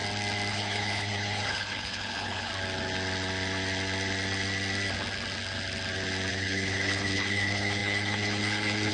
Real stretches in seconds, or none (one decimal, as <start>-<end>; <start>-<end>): 0.0-0.5; 2.5-6.3